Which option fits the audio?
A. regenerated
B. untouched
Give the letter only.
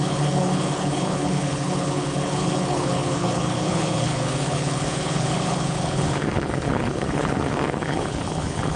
A